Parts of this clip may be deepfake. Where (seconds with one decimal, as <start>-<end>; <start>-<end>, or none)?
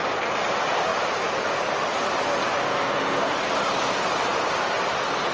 2.6-3.3